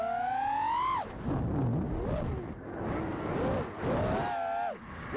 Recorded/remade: recorded